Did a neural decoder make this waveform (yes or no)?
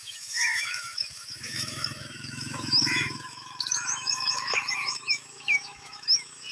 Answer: yes